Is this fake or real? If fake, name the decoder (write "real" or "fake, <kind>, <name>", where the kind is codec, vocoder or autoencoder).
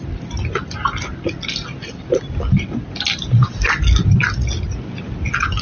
real